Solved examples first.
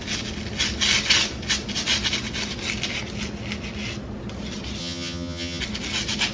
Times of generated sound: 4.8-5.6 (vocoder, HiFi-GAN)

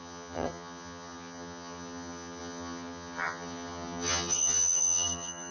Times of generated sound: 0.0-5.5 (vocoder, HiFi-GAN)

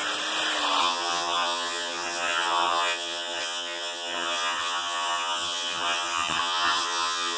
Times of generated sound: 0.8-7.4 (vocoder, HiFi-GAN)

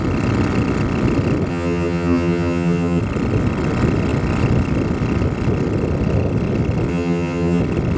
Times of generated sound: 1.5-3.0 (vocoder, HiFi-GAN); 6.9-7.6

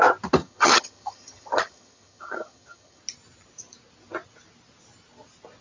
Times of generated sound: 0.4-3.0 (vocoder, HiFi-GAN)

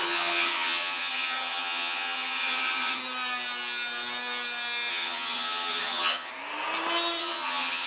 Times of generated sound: 0.0-3.0 (vocoder, HiFi-GAN); 4.9-6.3; 7.2-7.9

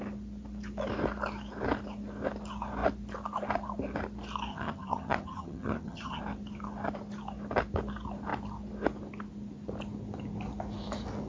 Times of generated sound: 4.5-6.2 (vocoder, HiFi-GAN)

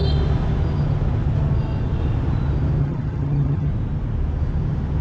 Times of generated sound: 2.8-3.7 (vocoder, HiFi-GAN)